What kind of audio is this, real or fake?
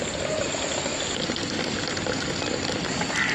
real